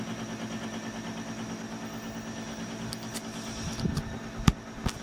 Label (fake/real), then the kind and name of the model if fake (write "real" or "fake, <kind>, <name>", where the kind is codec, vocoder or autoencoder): real